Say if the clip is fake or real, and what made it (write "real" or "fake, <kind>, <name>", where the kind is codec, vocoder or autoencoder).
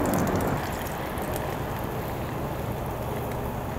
real